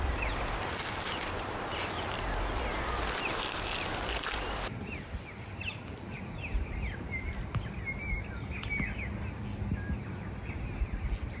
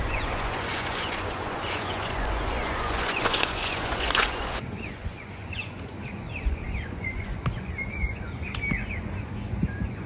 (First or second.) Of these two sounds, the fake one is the second